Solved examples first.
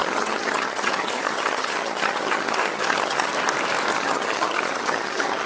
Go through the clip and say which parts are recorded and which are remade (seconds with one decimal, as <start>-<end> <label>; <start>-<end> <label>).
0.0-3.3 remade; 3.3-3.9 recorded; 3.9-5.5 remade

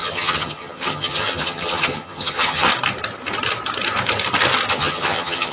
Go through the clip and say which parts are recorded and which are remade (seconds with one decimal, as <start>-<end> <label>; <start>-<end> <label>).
0.0-2.7 remade; 2.7-4.7 recorded; 4.7-5.5 remade

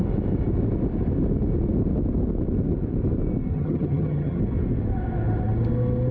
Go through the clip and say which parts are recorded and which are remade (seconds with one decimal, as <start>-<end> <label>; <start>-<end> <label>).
0.0-3.5 recorded; 3.5-4.4 remade; 4.4-6.1 recorded